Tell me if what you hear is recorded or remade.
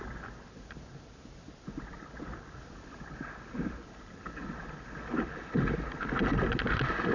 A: recorded